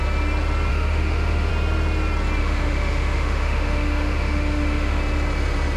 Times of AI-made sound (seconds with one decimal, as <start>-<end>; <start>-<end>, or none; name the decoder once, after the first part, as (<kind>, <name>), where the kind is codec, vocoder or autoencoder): 0.7-1.5 (autoencoder, DAC-VAE); 2.4-5.0